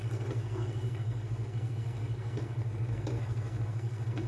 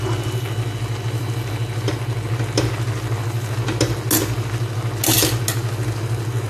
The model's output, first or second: first